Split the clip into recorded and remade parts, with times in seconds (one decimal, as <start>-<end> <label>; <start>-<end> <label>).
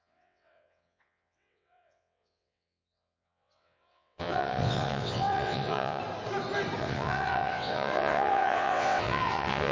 0.0-6.0 remade; 6.0-6.8 recorded; 6.8-9.7 remade